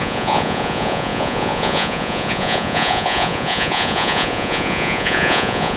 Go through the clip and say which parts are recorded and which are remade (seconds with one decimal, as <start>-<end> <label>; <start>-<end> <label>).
0.0-5.8 remade